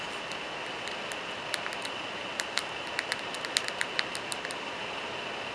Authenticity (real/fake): real